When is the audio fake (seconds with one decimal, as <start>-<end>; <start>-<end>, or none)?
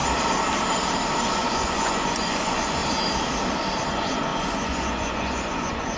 1.3-2.8; 3.9-6.0